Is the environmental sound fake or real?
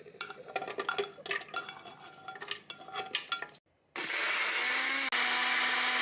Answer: real